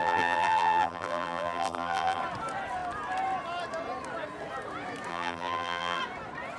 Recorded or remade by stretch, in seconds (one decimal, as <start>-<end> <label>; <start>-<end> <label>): 0.0-2.2 remade; 2.2-5.1 recorded; 5.1-6.0 remade; 6.0-6.6 recorded